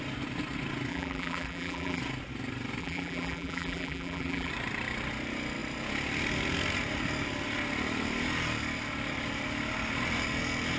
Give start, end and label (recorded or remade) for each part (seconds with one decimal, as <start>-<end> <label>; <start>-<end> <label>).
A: 0.0-0.9 recorded; 0.9-2.0 remade; 2.0-2.8 recorded; 2.8-4.5 remade; 4.5-10.8 recorded

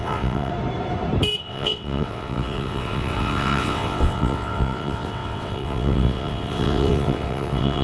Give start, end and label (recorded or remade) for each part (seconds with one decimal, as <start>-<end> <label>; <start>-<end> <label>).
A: 0.0-0.5 remade; 0.5-1.4 recorded; 1.4-7.8 remade

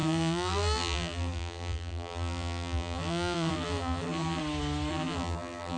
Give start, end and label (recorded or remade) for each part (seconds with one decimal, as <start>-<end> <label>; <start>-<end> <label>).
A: 0.0-4.4 remade; 4.4-4.9 recorded; 4.9-5.8 remade